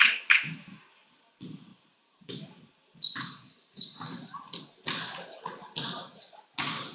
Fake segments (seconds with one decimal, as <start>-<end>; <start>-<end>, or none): none